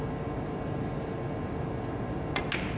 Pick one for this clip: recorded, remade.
recorded